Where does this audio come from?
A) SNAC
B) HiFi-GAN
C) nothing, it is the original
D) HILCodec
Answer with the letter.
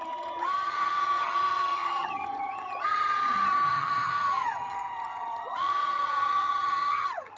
B